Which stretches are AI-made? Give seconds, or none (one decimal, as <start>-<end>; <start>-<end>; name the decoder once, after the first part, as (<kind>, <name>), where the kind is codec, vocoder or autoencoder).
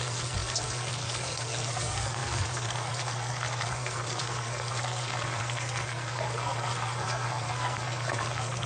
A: 0.0-8.7 (codec, SNAC)